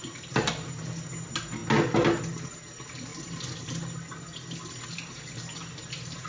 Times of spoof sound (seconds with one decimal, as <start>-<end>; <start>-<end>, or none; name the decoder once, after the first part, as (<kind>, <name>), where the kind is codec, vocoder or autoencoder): none